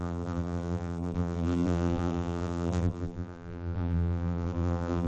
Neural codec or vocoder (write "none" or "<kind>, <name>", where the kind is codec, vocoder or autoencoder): vocoder, BigVGAN v2